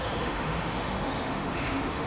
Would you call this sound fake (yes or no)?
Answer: yes